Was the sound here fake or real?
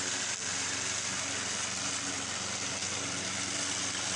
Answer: real